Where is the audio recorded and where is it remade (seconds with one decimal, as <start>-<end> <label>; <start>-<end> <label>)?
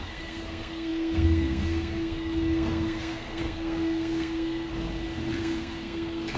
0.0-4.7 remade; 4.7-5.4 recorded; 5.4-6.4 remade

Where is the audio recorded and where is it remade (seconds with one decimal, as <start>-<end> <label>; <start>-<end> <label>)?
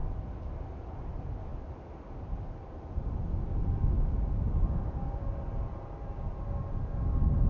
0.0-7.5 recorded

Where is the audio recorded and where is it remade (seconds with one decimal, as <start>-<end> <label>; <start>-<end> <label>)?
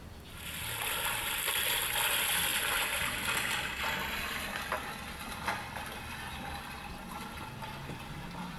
0.0-8.6 recorded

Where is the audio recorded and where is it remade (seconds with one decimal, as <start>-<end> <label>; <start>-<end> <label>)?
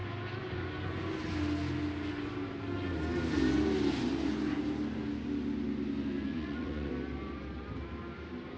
0.0-6.3 recorded; 6.3-6.9 remade; 6.9-8.6 recorded